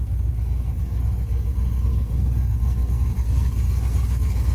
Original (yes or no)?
no